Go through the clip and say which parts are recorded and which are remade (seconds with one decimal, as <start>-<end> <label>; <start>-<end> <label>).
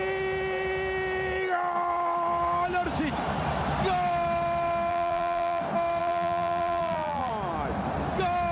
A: 0.0-4.9 recorded; 4.9-5.6 remade; 5.6-6.0 recorded; 6.0-7.3 remade; 7.3-8.5 recorded